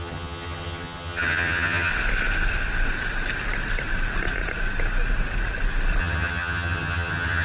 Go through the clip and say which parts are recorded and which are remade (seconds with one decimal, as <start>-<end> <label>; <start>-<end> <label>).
0.0-1.9 remade; 1.9-6.0 recorded; 6.0-7.4 remade